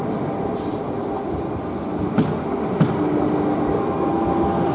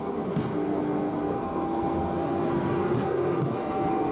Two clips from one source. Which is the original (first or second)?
first